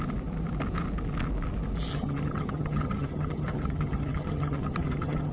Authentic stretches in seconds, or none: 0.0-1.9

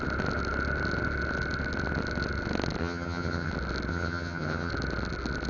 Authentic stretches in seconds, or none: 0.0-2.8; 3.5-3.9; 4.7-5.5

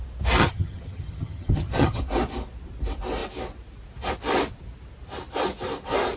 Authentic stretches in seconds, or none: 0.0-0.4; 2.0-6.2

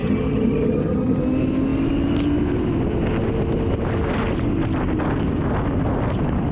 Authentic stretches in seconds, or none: 1.2-6.5

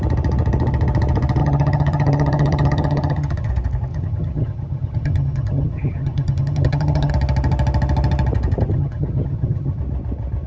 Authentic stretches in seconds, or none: 0.0-1.4; 3.5-3.9; 7.1-8.7; 9.8-10.5